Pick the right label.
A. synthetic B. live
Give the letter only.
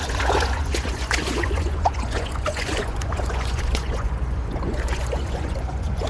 A